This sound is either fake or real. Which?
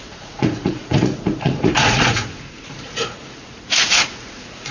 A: fake